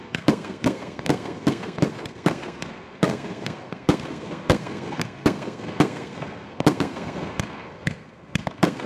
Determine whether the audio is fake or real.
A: fake